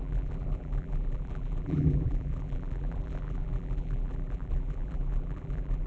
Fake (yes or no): yes